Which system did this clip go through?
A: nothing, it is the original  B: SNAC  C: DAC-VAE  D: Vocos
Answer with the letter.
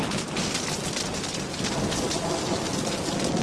A